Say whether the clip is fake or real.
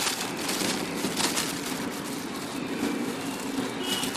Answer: real